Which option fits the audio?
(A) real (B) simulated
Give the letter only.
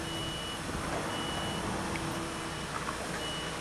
A